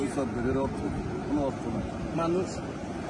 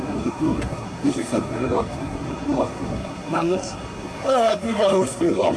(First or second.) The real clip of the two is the first